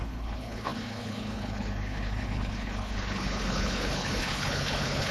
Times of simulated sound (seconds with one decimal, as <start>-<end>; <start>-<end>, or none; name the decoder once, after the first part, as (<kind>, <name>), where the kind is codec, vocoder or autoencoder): 0.0-5.1 (codec, HILCodec)